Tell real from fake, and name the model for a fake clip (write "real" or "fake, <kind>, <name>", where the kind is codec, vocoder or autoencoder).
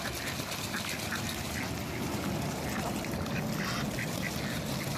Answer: real